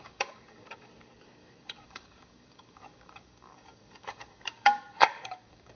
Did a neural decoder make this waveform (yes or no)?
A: yes